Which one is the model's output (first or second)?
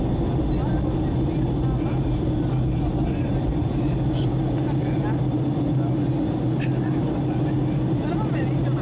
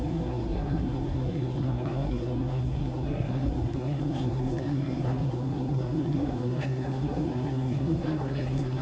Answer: second